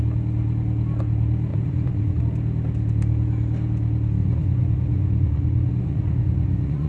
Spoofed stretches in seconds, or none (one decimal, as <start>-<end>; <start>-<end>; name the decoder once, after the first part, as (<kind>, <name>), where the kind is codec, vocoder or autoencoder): 1.5-2.2 (vocoder, Vocos); 4.2-6.9